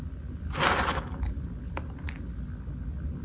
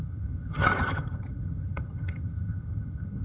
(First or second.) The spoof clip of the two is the second